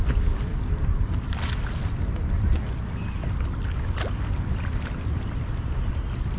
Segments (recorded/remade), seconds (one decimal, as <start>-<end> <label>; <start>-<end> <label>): 0.0-6.4 recorded

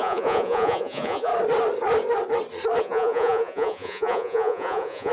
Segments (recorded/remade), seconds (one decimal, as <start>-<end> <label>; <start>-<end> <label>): 0.0-1.3 remade; 1.3-2.8 recorded; 2.8-5.1 remade

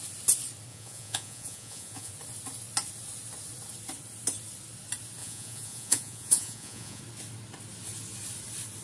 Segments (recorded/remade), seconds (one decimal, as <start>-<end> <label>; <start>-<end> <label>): 0.0-0.7 recorded; 0.7-2.1 remade; 2.1-5.2 recorded; 5.2-7.0 remade; 7.0-8.8 recorded

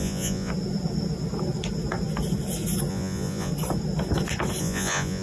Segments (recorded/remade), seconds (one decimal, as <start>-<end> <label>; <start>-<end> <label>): 0.0-0.5 remade; 0.5-2.9 recorded; 2.9-3.5 remade; 3.5-4.6 recorded; 4.6-5.2 remade

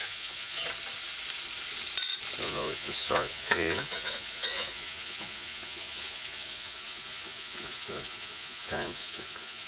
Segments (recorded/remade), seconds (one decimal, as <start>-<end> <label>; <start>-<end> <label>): 0.0-0.6 remade; 0.6-2.4 recorded; 2.4-9.7 remade

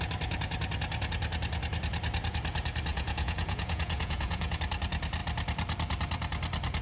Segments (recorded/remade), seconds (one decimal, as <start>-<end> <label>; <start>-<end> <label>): 0.0-2.9 recorded; 2.9-4.6 remade; 4.6-6.8 recorded

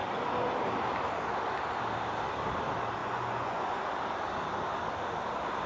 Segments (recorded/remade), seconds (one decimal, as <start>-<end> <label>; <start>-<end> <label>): 0.0-3.0 recorded; 3.0-3.8 remade; 3.8-5.7 recorded

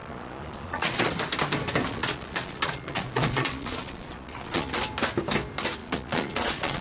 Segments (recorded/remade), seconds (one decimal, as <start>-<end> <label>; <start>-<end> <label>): 0.0-1.1 remade; 1.1-1.9 recorded; 1.9-4.7 remade; 4.7-5.8 recorded; 5.8-6.8 remade